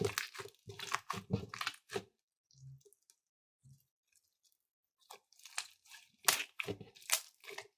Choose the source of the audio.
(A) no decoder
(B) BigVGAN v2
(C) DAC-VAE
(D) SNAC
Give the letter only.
A